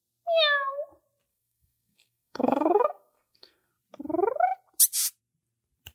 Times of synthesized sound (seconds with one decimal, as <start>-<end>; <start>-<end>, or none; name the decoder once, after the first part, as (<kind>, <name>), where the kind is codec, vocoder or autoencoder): 1.3-3.7 (codec, SNAC)